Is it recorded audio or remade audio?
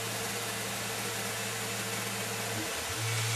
recorded